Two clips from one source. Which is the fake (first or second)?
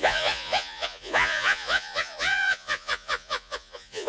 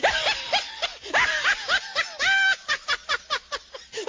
first